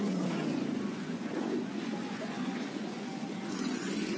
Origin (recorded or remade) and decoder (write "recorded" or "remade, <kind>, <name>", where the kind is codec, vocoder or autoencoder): remade, vocoder, Vocos